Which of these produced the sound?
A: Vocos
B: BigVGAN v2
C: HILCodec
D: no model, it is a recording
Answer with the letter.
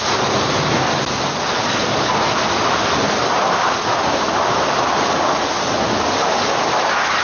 D